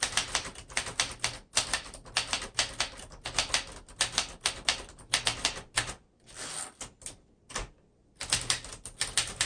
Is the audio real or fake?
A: real